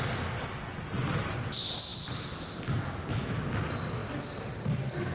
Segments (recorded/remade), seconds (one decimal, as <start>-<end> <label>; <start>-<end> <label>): 0.0-5.1 recorded